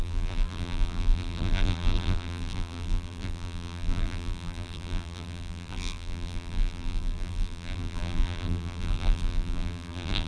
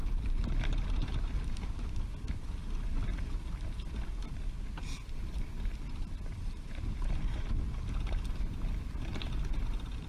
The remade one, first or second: first